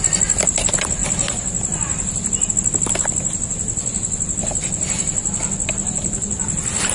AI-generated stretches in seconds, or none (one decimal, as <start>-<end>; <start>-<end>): none